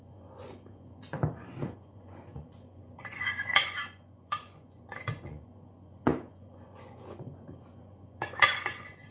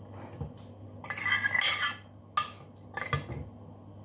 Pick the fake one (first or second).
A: first